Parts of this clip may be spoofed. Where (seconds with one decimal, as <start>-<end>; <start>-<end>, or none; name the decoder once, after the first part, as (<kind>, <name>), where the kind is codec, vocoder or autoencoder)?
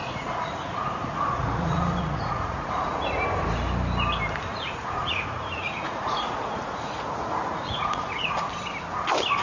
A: 0.0-3.0 (vocoder, Vocos); 4.5-8.5